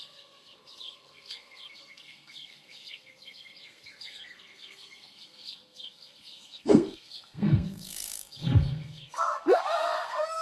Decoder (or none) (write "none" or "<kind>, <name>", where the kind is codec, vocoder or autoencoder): codec, SNAC